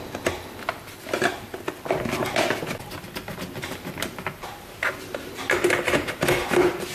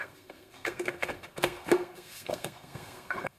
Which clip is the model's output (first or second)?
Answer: second